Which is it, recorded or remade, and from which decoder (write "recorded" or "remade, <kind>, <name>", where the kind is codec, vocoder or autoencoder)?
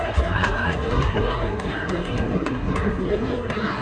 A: remade, codec, SNAC